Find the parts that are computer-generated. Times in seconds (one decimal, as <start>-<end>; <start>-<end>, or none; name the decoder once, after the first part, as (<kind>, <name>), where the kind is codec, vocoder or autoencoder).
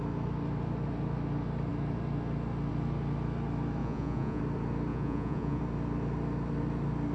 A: 3.8-4.4 (vocoder, Vocos); 4.9-5.6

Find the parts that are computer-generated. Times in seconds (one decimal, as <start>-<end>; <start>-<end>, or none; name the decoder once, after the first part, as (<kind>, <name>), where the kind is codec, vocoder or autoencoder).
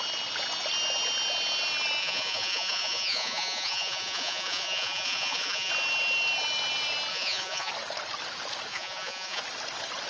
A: 2.0-5.7 (vocoder, Vocos); 7.1-7.7; 8.7-9.4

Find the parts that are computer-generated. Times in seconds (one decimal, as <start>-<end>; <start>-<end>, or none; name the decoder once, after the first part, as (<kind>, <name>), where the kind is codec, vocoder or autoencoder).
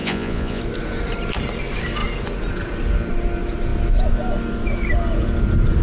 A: 0.0-0.6 (vocoder, Vocos)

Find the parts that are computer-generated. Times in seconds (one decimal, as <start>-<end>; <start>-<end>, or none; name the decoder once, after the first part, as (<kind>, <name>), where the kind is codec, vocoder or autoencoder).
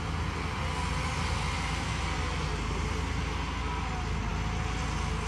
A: none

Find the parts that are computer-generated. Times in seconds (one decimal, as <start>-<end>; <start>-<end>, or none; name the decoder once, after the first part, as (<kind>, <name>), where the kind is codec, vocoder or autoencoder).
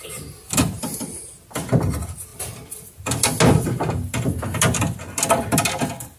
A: none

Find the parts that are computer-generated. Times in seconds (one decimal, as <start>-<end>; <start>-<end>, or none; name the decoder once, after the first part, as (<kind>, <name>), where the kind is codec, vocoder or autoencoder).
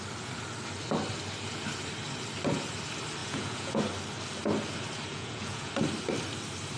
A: 3.2-3.8 (vocoder, Vocos); 5.1-5.7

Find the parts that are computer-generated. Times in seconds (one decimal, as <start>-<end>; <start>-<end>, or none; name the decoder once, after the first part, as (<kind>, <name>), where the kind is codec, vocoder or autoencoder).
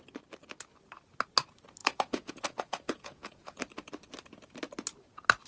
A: 1.8-3.6 (vocoder, Vocos)